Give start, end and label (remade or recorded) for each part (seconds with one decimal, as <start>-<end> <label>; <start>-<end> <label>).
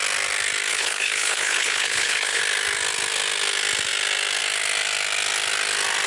0.0-0.7 recorded; 0.7-2.4 remade; 2.4-6.1 recorded